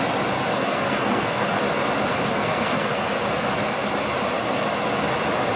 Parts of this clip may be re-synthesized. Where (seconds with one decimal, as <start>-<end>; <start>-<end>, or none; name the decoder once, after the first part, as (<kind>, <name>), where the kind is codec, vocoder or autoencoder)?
0.6-1.6 (codec, SNAC); 2.1-3.1